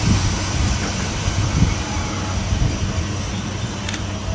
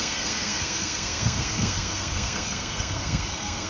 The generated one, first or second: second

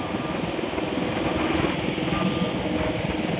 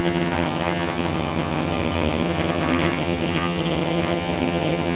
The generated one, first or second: second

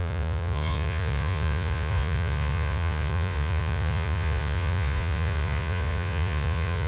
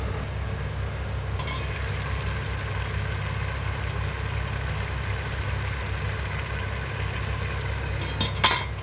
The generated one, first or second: first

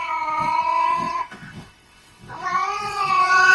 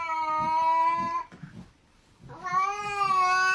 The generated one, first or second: first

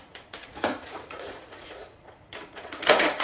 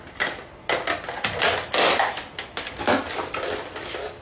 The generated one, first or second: first